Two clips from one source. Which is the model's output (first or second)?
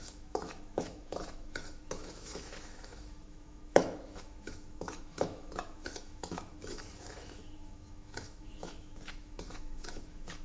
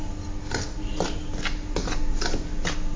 first